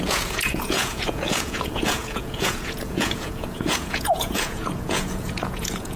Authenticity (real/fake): fake